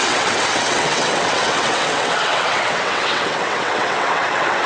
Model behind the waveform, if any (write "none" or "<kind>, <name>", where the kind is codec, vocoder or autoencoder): vocoder, WaveNeXt